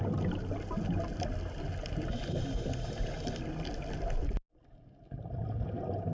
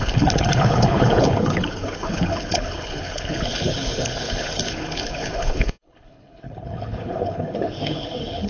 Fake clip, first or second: second